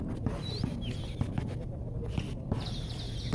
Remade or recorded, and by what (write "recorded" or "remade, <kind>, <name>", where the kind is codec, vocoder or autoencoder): recorded